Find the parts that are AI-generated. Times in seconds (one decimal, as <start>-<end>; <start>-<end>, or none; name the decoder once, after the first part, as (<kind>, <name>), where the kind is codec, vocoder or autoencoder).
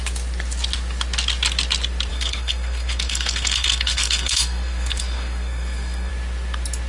2.1-6.1 (codec, SNAC)